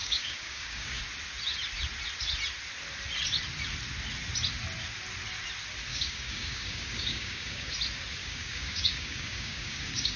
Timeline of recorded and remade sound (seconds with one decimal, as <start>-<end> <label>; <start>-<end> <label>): 0.0-1.0 remade; 1.0-5.9 recorded; 5.9-7.7 remade; 7.7-8.2 recorded; 8.2-10.2 remade

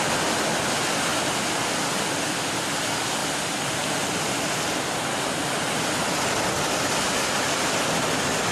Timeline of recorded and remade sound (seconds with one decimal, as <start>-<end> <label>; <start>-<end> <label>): 0.0-1.1 recorded; 1.1-2.3 remade; 2.3-3.2 recorded; 3.2-4.8 remade; 4.8-8.5 recorded

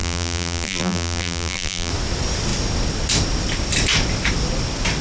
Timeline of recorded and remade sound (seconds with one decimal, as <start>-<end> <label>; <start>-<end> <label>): 0.0-1.9 remade; 1.9-5.0 recorded

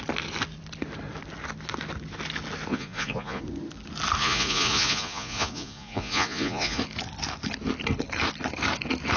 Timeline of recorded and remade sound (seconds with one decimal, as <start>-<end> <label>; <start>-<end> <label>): 0.0-2.7 recorded; 2.7-3.4 remade; 3.4-4.2 recorded; 4.2-6.8 remade; 6.8-9.2 recorded

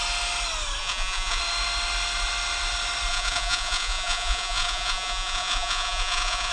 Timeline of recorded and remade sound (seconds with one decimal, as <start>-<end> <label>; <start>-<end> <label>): 0.0-0.8 recorded; 0.8-1.4 remade; 1.4-3.1 recorded; 3.1-6.5 remade

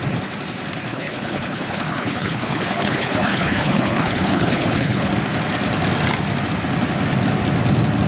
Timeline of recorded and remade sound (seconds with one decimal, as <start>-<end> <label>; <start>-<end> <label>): 0.0-0.9 recorded; 0.9-5.1 remade; 5.1-8.1 recorded